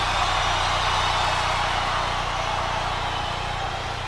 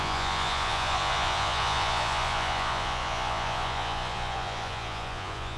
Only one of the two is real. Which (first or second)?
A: first